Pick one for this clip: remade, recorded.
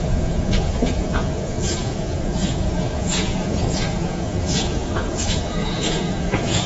remade